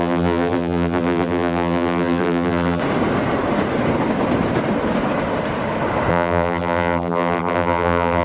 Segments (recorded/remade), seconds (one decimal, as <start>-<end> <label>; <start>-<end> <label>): 0.0-2.8 remade; 2.8-6.1 recorded; 6.1-8.2 remade